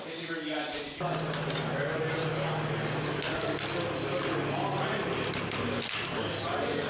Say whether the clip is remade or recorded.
recorded